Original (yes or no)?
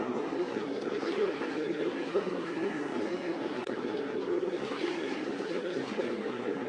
no